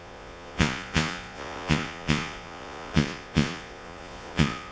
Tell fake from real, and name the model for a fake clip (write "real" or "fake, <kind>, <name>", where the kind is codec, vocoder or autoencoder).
fake, vocoder, Vocos